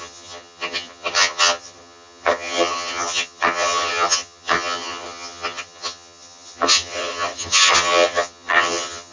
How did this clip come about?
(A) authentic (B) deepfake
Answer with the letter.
B